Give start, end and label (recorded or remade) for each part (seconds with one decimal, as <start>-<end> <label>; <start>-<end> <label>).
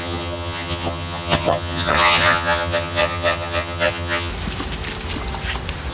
0.0-4.3 remade; 4.3-5.9 recorded